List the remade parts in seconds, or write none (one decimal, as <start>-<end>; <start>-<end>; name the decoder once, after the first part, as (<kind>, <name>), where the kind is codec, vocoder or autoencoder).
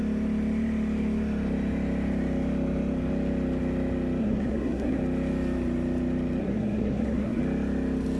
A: 4.2-5.0 (codec, SNAC); 6.4-7.4